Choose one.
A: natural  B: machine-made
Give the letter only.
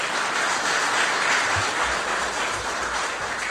A